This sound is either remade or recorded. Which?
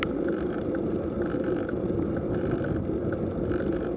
remade